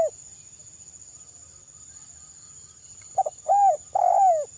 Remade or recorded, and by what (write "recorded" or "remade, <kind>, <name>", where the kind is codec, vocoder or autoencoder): recorded